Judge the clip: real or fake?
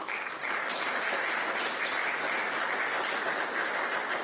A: real